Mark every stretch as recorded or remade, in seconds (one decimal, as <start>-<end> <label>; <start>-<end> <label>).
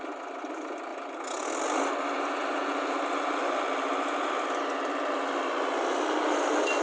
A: 0.0-6.8 recorded